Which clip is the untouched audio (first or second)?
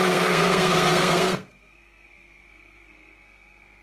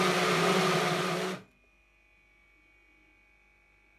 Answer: second